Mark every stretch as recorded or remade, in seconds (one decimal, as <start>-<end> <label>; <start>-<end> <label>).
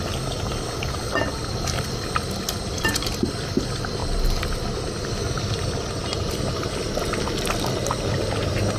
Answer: 0.0-8.8 recorded